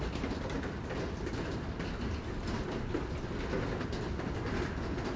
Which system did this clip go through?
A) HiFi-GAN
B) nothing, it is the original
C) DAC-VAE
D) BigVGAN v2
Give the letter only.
B